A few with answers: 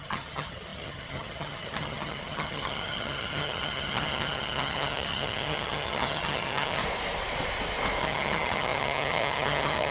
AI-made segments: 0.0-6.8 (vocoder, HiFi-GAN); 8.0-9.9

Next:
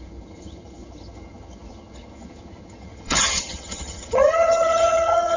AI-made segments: 0.0-5.4 (vocoder, HiFi-GAN)

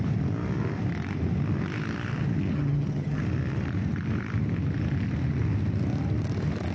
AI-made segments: 2.5-3.2 (vocoder, HiFi-GAN)

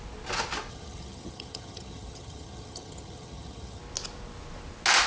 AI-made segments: 0.7-3.8 (vocoder, HiFi-GAN)

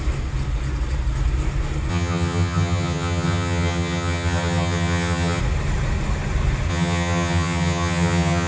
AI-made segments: 1.9-5.4 (vocoder, HiFi-GAN); 6.7-8.5

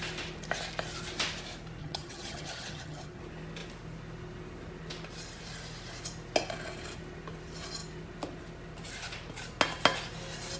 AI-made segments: 1.8-3.2 (vocoder, HiFi-GAN)

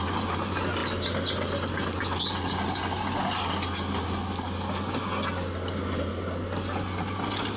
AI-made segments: none